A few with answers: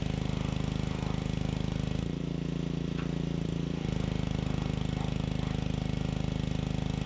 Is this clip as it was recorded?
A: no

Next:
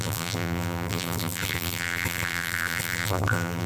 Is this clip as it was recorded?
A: no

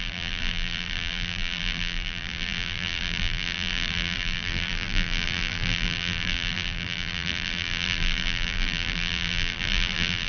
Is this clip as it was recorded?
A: no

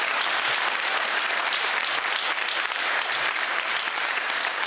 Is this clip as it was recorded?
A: no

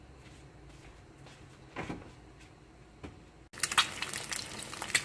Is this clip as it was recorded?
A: yes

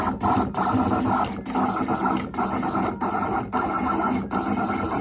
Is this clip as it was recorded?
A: yes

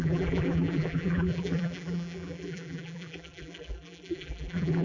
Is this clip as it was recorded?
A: no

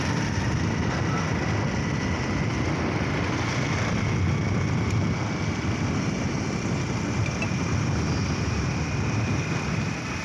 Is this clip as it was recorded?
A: yes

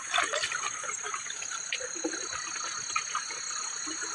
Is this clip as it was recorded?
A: yes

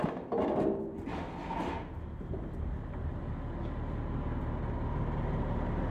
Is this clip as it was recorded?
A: yes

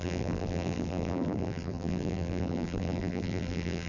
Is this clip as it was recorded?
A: no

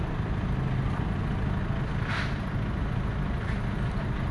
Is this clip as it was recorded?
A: yes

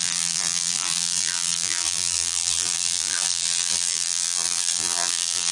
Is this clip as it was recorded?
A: no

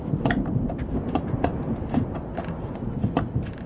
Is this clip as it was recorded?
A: yes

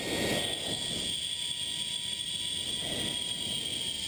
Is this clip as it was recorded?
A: yes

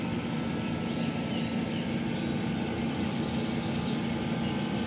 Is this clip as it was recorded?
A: yes